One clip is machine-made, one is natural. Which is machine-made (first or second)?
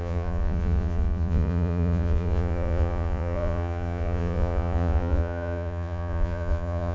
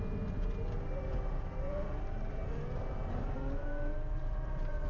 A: first